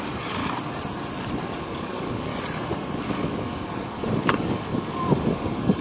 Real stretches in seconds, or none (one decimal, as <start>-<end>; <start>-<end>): 0.4-1.6; 2.3-3.0